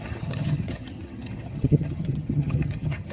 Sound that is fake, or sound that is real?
fake